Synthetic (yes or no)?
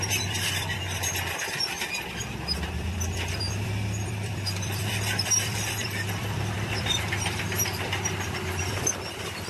yes